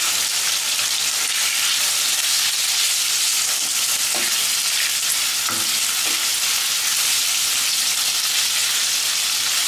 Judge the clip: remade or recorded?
recorded